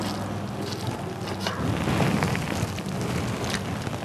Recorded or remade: recorded